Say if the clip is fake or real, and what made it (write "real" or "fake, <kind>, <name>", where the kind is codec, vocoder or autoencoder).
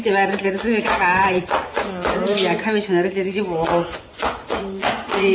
fake, vocoder, Vocos